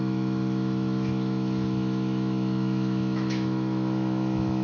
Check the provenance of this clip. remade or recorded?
remade